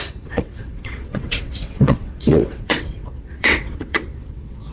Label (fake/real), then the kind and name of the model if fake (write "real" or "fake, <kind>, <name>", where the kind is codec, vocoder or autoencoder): fake, vocoder, WaveNeXt